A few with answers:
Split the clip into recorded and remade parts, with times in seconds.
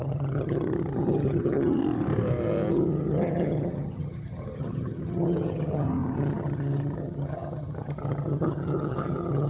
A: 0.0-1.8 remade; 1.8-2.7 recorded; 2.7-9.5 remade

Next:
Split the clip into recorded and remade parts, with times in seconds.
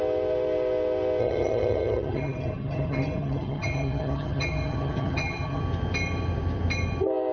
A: 0.0-1.2 recorded; 1.2-5.6 remade; 5.6-7.3 recorded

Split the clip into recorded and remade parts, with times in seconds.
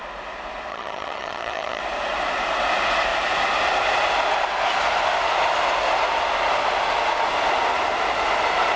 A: 0.0-0.7 recorded; 0.7-1.8 remade; 1.8-8.8 recorded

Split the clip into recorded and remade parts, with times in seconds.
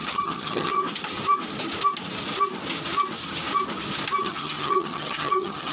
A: 0.0-0.8 remade; 0.8-4.2 recorded; 4.2-5.7 remade